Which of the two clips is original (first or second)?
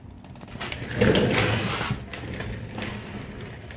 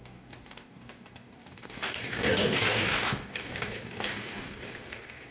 first